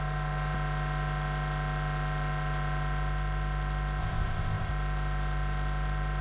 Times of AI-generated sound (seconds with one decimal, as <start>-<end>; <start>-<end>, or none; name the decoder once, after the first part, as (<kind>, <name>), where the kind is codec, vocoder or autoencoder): 4.0-4.7 (codec, ZipCodec)